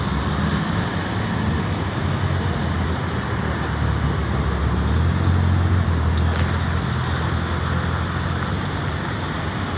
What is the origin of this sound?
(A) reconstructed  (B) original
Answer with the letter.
B